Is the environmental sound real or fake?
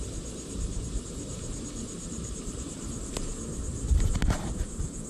fake